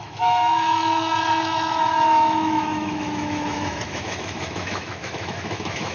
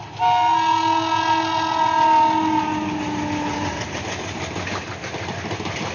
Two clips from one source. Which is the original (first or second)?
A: second